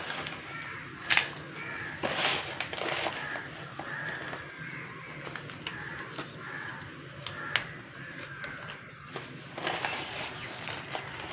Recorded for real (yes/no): yes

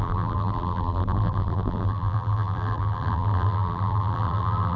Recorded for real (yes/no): no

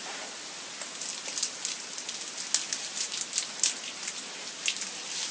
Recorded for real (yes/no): yes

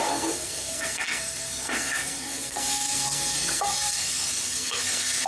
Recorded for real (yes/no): no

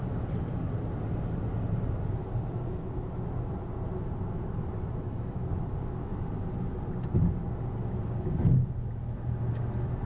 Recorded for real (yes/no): yes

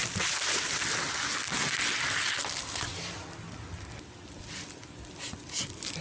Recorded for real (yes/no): yes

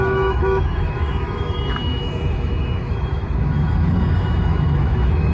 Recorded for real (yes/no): no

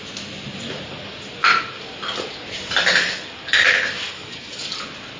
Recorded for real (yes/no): yes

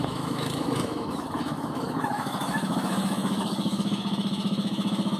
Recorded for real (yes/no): no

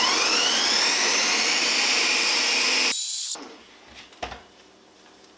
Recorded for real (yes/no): yes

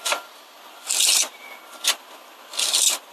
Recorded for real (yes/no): yes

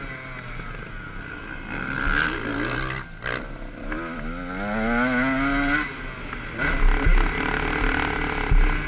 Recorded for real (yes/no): yes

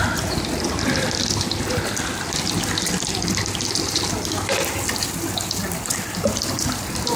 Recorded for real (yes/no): yes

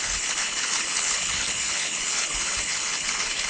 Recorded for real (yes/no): no